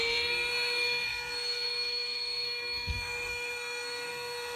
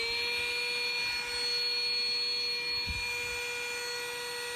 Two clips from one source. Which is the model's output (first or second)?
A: first